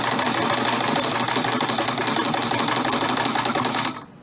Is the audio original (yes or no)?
yes